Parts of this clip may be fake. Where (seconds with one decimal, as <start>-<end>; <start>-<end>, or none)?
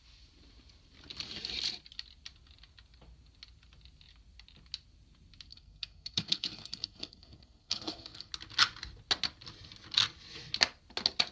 5.5-8.3